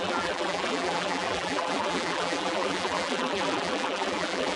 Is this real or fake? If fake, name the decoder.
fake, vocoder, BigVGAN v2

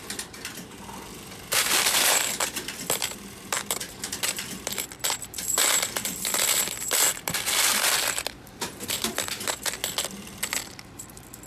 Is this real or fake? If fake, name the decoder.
fake, vocoder, BigVGAN v2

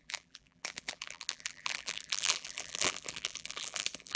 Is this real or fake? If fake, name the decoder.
fake, vocoder, BigVGAN v2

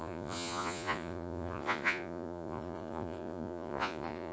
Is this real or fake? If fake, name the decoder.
fake, vocoder, Vocos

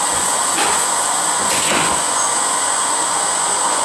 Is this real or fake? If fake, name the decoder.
fake, vocoder, Vocos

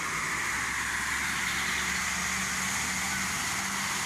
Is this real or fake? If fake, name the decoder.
real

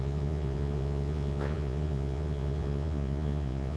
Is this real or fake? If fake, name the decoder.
fake, vocoder, Vocos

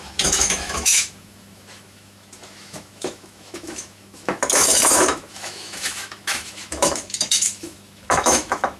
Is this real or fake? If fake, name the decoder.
fake, autoencoder, DAC-VAE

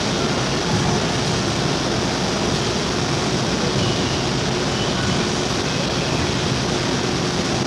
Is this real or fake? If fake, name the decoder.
real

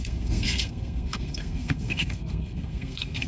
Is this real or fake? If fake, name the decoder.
fake, codec, SNAC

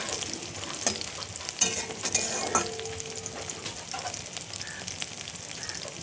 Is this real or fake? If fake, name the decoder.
real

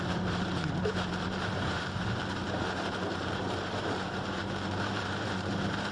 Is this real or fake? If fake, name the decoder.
fake, vocoder, BigVGAN v2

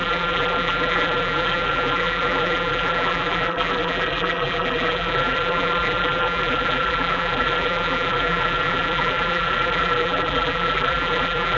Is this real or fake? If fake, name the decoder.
fake, vocoder, BigVGAN v2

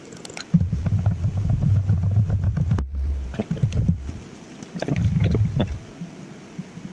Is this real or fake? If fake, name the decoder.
real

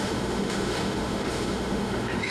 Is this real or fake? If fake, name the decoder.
fake, autoencoder, DAC-VAE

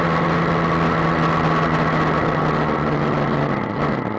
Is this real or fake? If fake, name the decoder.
real